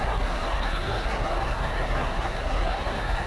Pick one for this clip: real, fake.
fake